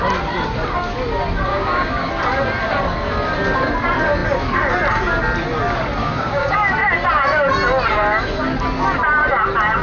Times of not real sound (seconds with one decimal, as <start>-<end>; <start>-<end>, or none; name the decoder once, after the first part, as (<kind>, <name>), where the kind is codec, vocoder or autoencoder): 1.5-2.1 (codec, DAC); 6.0-6.7